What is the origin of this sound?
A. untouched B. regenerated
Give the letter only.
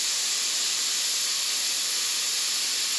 A